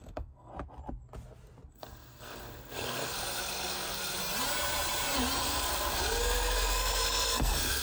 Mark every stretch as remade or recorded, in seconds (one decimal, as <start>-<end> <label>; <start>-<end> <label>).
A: 0.0-0.5 remade; 0.5-1.7 recorded; 1.7-4.2 remade; 4.2-5.4 recorded; 5.4-7.8 remade